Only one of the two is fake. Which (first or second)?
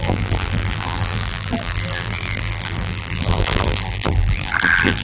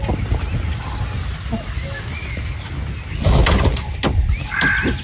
first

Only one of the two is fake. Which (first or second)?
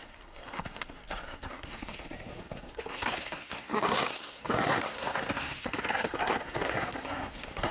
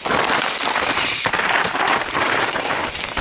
first